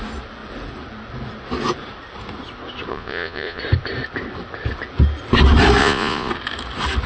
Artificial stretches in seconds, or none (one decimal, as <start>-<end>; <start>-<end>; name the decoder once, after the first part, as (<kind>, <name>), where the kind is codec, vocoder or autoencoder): 2.9-3.6 (vocoder, Vocos); 5.8-6.3